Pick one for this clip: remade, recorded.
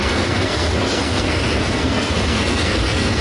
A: remade